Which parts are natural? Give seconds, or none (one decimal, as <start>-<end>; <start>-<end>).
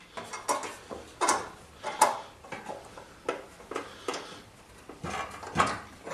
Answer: 0.0-6.1